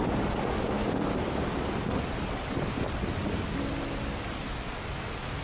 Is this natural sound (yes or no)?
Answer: yes